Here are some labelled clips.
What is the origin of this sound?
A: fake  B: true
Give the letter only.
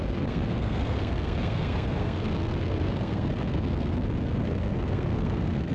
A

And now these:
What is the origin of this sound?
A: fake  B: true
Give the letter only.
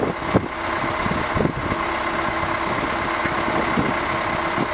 B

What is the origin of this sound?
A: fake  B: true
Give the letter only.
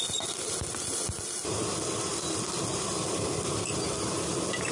B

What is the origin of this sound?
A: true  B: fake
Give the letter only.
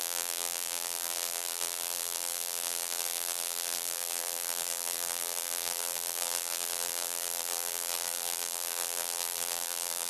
B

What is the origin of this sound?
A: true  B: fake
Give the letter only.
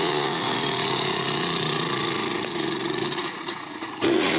B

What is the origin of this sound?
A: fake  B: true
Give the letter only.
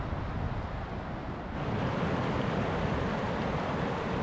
B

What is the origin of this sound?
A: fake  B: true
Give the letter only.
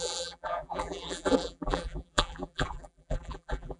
A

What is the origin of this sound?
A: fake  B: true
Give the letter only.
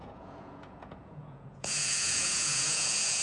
A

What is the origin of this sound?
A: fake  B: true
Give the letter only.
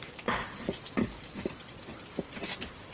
A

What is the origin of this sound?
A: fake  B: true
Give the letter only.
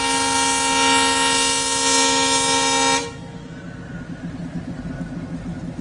B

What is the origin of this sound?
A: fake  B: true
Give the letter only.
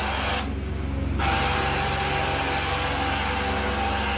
B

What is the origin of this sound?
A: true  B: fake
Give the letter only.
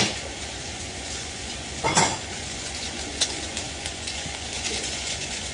B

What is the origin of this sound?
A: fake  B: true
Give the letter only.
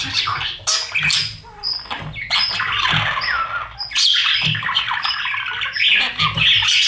B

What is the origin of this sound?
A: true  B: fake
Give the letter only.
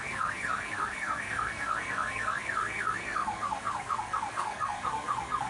B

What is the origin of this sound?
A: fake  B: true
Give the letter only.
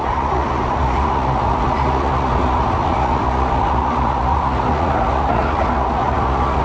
A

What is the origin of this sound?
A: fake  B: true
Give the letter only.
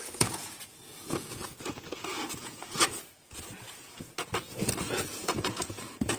A